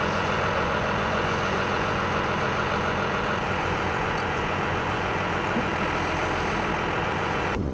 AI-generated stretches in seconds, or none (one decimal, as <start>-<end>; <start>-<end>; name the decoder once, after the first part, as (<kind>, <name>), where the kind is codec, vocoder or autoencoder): 0.0-5.7 (vocoder, Vocos); 7.0-7.7